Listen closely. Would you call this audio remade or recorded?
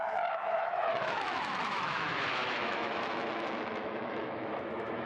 remade